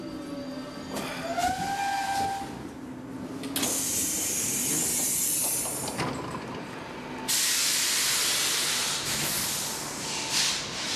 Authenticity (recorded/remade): recorded